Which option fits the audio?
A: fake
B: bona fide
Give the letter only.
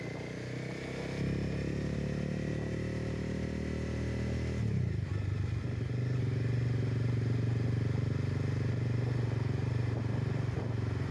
B